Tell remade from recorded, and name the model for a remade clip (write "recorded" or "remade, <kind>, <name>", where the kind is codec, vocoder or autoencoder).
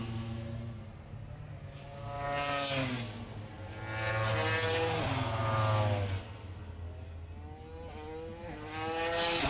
recorded